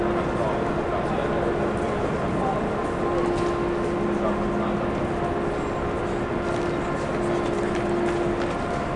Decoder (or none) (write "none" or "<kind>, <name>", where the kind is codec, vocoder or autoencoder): none